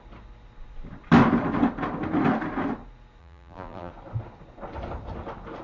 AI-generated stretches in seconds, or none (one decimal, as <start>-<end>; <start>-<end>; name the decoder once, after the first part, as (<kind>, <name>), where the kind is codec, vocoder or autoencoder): 3.2-3.9 (vocoder, BigVGAN v2)